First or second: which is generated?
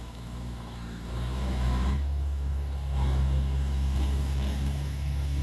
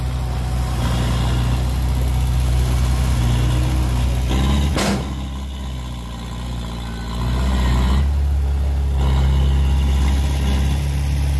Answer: first